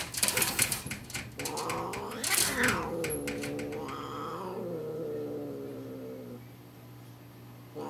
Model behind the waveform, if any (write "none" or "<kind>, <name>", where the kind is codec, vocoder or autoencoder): none